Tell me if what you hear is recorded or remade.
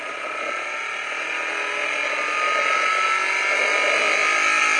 recorded